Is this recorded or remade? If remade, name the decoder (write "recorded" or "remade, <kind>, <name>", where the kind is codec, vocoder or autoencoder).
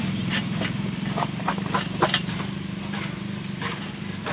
recorded